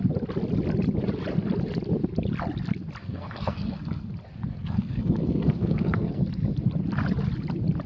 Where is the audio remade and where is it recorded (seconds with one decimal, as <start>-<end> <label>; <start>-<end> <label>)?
0.0-3.0 recorded; 3.0-4.1 remade; 4.1-4.5 recorded; 4.5-6.2 remade; 6.2-7.9 recorded